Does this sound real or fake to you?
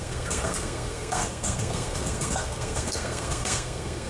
fake